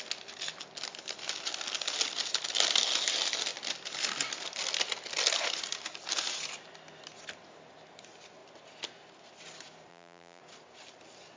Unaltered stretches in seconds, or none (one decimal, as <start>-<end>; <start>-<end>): 0.0-9.9; 10.4-11.4